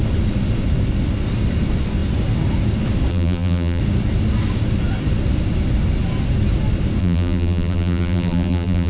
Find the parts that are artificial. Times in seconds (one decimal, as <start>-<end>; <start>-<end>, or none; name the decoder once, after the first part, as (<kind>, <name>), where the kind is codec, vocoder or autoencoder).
3.1-3.8 (vocoder, BigVGAN v2); 7.0-8.9